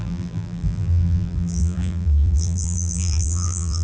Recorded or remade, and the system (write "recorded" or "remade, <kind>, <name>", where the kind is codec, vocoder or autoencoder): remade, vocoder, BigVGAN v2